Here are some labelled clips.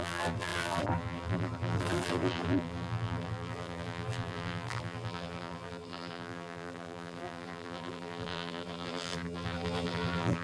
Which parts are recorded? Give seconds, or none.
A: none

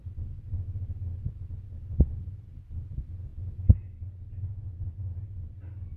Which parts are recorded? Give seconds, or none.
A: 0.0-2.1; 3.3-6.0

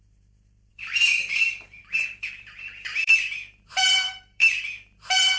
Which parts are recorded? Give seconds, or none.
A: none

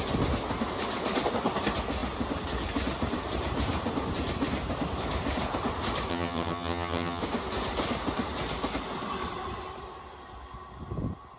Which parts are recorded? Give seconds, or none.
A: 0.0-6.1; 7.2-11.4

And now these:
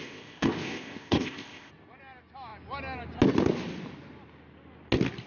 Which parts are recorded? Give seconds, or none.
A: 1.7-5.3

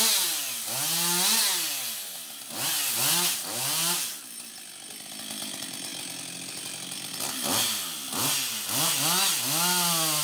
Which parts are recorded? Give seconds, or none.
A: 0.0-10.2